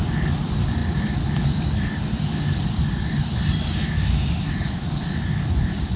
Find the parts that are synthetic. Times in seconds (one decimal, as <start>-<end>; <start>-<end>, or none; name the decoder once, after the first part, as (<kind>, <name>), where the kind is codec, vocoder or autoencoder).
none